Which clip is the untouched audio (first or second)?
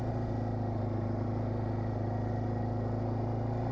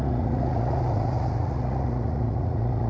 first